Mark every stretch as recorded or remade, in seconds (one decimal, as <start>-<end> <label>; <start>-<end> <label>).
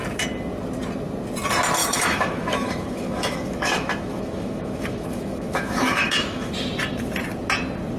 0.0-1.8 recorded; 1.8-6.5 remade; 6.5-8.0 recorded